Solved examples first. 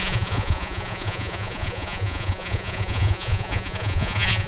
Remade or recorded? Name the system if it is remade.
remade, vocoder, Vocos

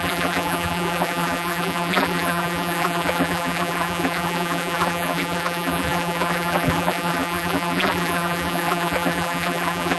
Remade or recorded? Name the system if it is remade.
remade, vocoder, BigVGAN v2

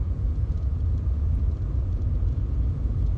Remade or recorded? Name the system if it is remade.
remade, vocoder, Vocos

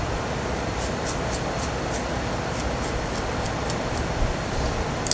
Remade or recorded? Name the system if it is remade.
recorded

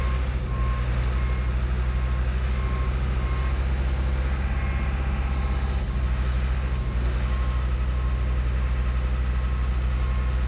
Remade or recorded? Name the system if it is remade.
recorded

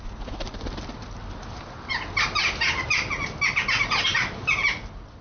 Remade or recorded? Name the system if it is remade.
recorded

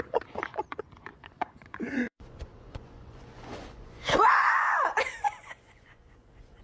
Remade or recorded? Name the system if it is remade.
remade, vocoder, Vocos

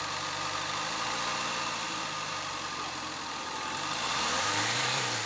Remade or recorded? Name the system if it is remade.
remade, vocoder, BigVGAN v2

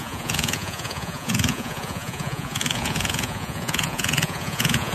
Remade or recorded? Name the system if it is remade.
remade, vocoder, Vocos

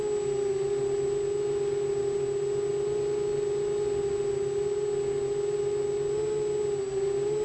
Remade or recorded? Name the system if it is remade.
recorded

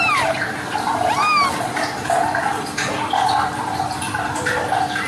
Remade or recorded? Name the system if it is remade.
recorded